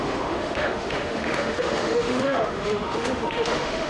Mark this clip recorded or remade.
remade